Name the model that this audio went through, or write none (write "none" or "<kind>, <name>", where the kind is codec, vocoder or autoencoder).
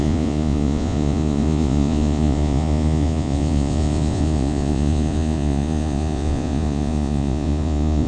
vocoder, Vocos